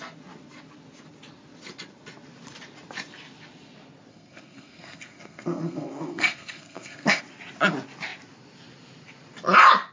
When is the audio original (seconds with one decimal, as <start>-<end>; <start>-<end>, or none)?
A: 0.0-4.1; 7.2-9.9